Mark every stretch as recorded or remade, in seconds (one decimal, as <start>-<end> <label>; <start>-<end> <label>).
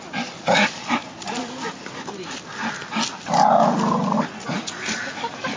0.0-5.6 recorded